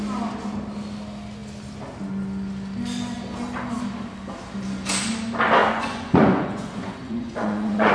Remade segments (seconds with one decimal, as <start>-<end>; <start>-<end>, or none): 5.6-7.9